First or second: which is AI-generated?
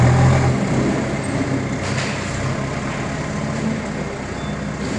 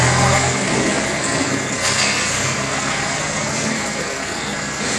second